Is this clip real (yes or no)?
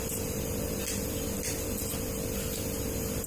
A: yes